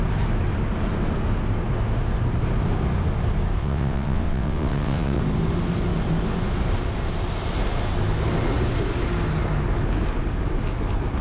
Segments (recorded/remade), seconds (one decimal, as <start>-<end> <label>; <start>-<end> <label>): 0.0-3.6 recorded; 3.6-5.2 remade; 5.2-11.2 recorded